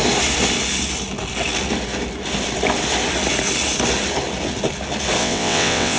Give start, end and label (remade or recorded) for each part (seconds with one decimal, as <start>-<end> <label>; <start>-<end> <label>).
0.0-5.2 recorded; 5.2-6.0 remade